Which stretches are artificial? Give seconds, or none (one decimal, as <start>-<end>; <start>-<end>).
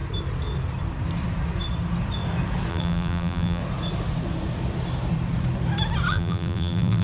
2.7-3.6; 6.1-7.0